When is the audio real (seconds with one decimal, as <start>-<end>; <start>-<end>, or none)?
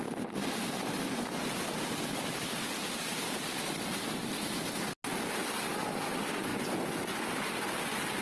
0.0-6.5; 7.2-8.2